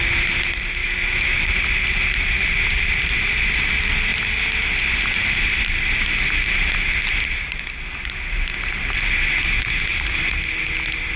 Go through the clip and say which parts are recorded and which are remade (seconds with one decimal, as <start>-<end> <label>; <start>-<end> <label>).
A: 0.0-0.8 recorded; 0.8-1.5 remade; 1.5-11.2 recorded